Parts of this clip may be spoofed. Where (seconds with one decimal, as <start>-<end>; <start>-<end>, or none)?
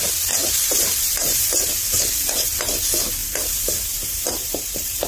0.4-2.5; 3.2-5.1